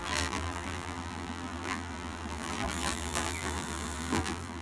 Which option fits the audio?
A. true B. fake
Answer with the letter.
B